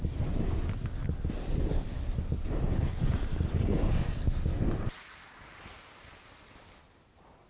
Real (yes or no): yes